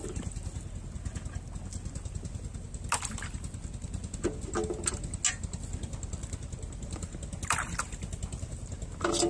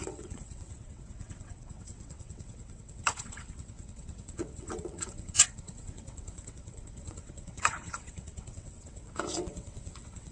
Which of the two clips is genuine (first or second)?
first